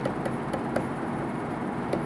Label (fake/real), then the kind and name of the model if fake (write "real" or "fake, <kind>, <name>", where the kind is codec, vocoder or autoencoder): real